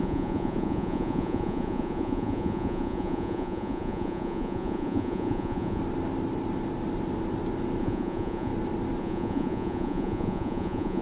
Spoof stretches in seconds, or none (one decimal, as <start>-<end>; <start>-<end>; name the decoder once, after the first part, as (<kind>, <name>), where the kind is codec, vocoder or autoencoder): 0.0-5.8 (vocoder, Vocos); 7.8-8.5; 9.0-11.0